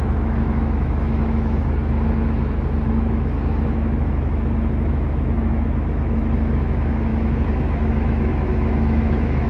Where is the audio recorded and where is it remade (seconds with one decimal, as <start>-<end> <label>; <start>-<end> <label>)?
0.0-9.5 remade